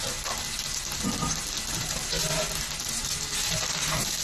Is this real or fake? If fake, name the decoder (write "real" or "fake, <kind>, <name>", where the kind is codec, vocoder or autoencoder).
real